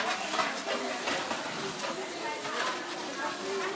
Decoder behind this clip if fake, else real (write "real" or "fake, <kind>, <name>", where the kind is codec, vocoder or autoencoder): real